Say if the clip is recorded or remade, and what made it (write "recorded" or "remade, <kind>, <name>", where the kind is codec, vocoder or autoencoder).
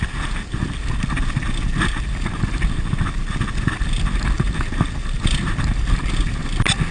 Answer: recorded